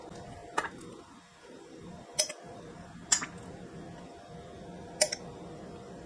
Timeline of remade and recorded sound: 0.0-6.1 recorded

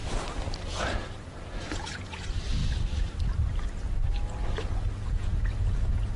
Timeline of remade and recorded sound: 0.0-0.7 recorded; 0.7-2.6 remade; 2.6-4.6 recorded; 4.6-6.2 remade

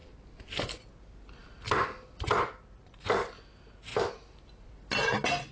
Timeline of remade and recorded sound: 0.0-5.5 recorded

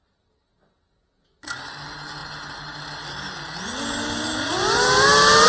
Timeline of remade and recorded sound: 0.0-5.5 recorded